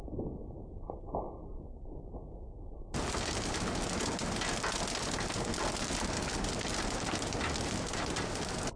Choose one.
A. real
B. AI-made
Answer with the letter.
A